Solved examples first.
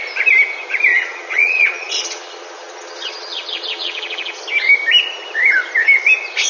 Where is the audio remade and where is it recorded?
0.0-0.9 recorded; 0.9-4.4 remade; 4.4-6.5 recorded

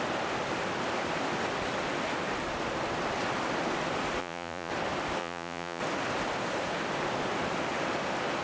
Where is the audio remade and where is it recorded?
0.0-4.2 recorded; 4.2-4.7 remade; 4.7-5.2 recorded; 5.2-5.8 remade; 5.8-8.4 recorded

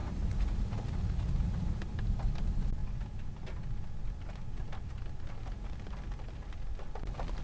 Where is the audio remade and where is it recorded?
0.0-1.8 remade; 1.8-7.4 recorded